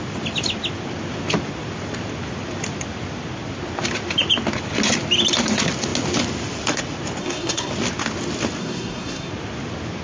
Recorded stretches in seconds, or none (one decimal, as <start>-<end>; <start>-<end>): 0.0-7.2; 7.7-8.6; 9.3-10.0